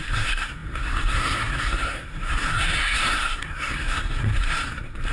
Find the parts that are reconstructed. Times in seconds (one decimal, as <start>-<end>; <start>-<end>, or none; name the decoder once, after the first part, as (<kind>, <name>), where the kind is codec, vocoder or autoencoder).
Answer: 0.0-5.1 (codec, SNAC)